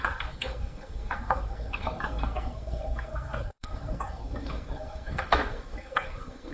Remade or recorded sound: remade